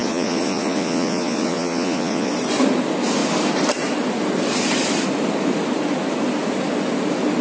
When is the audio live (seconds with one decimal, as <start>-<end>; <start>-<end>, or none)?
2.3-7.4